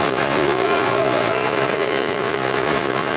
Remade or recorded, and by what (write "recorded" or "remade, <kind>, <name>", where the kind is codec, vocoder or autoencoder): remade, vocoder, Vocos